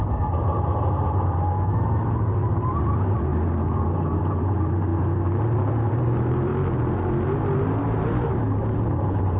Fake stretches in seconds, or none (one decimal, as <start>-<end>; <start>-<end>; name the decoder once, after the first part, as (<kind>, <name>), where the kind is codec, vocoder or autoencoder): 0.0-3.3 (vocoder, BigVGAN v2); 4.2-4.9; 5.9-6.5; 7.6-9.4

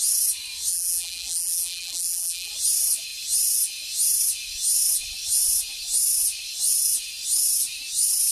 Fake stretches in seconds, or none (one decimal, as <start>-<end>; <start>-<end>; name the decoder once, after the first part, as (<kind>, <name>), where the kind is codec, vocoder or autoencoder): 0.7-2.5 (vocoder, BigVGAN v2)